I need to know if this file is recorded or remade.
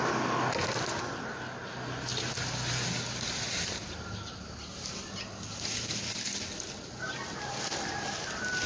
recorded